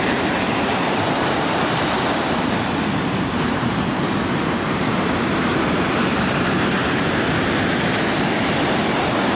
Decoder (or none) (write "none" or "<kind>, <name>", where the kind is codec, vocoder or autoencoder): vocoder, BigVGAN v2